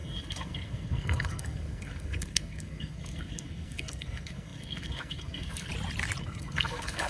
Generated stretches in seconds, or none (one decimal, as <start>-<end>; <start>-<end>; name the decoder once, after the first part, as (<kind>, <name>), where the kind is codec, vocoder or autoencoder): 0.0-5.7 (codec, SNAC); 6.2-7.1